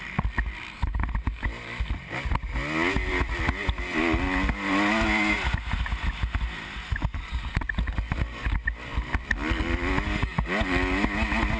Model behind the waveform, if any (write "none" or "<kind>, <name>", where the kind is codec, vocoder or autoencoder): none